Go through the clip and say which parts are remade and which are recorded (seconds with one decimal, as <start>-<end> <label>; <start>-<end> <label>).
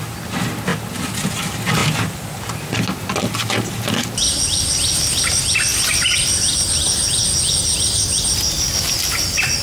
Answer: 0.0-9.6 recorded